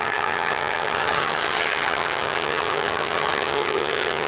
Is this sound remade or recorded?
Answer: remade